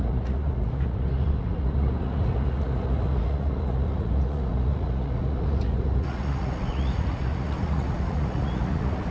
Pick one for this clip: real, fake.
fake